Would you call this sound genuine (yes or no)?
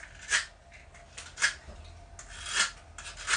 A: yes